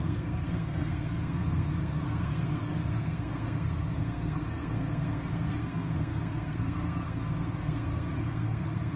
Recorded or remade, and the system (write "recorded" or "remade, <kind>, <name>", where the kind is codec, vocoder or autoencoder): remade, codec, SNAC